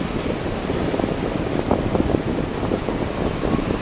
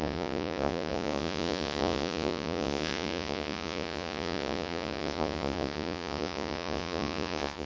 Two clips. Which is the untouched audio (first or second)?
first